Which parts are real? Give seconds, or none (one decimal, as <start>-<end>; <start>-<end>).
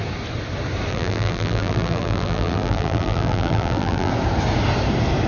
0.0-0.9; 4.1-5.3